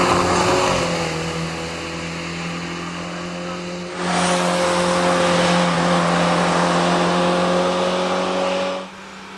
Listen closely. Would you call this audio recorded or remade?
recorded